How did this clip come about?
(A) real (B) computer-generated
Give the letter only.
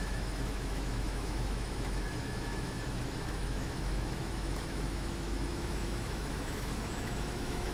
B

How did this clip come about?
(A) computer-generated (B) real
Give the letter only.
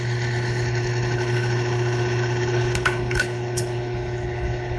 A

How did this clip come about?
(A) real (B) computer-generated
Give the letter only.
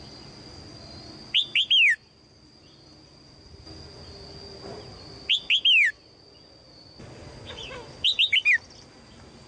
A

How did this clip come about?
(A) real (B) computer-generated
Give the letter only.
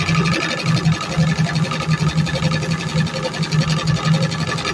A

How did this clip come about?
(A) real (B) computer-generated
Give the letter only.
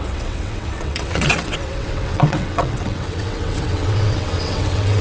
B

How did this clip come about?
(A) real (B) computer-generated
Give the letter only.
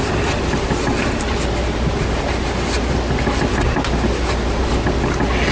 A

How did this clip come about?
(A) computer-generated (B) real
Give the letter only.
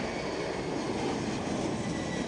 B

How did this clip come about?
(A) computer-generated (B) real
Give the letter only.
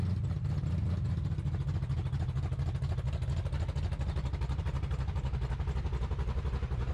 B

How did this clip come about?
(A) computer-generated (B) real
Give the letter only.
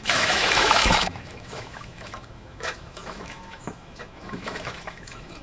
A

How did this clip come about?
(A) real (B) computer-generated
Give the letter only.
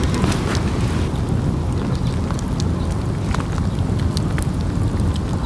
A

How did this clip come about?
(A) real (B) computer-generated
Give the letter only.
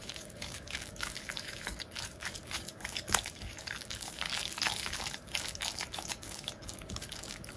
B